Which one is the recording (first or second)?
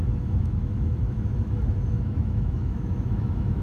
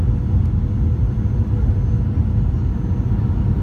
second